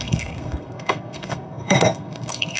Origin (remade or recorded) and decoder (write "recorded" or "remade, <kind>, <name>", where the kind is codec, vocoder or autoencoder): remade, codec, SNAC